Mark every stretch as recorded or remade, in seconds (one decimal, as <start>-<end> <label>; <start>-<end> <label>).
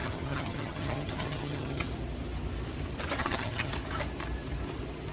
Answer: 0.0-1.9 remade; 1.9-3.2 recorded; 3.2-3.7 remade; 3.7-5.1 recorded